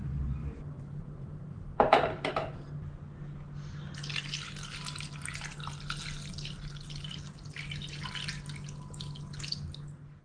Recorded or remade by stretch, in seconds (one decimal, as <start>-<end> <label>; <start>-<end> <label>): 0.0-0.4 recorded; 0.4-2.3 remade; 2.3-10.2 recorded